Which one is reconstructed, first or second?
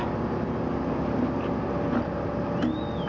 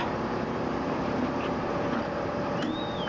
second